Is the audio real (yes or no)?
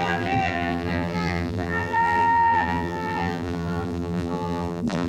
no